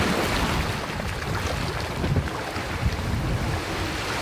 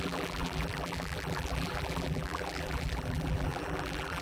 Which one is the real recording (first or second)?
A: first